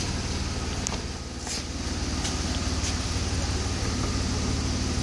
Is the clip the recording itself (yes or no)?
yes